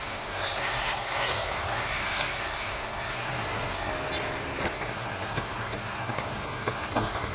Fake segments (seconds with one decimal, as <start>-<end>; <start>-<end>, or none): 0.0-3.9; 4.7-7.3